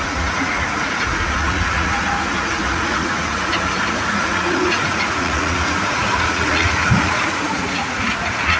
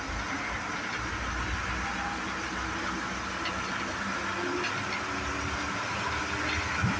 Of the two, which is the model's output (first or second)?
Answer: first